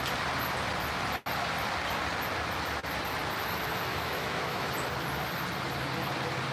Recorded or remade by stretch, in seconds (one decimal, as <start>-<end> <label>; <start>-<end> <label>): 0.0-3.9 recorded; 3.9-4.7 remade; 4.7-6.5 recorded

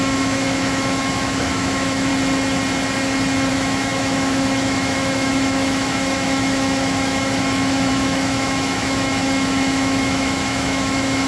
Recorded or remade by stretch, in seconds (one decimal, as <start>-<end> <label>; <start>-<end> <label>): 0.0-2.1 remade; 2.1-3.5 recorded; 3.5-11.3 remade

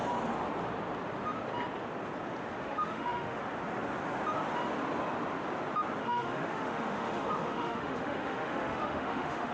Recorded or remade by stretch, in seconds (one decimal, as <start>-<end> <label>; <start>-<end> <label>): 0.0-2.6 recorded; 2.6-3.4 remade; 3.4-6.0 recorded; 6.0-9.5 remade

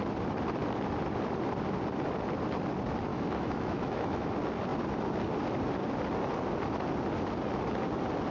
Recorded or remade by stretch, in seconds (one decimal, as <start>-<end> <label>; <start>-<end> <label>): 0.0-3.1 recorded; 3.1-4.3 remade; 4.3-8.3 recorded

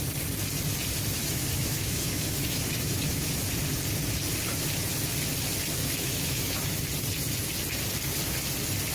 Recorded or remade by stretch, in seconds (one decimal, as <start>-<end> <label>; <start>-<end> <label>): 0.0-1.2 recorded; 1.2-3.3 remade; 3.3-5.8 recorded; 5.8-6.8 remade; 6.8-8.9 recorded

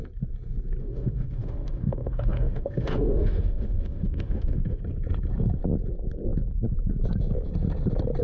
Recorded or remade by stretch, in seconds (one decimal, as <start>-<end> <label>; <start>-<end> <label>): 0.0-0.8 recorded; 0.8-4.8 remade; 4.8-8.2 recorded

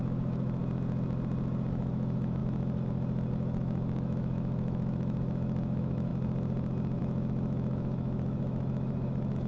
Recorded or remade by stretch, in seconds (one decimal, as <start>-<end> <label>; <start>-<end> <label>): 0.0-0.6 remade; 0.6-1.7 recorded; 1.7-2.4 remade; 2.4-3.3 recorded; 3.3-6.1 remade; 6.1-7.0 recorded; 7.0-9.5 remade